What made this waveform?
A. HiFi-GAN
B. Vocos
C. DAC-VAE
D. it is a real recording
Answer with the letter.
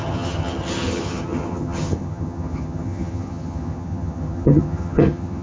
A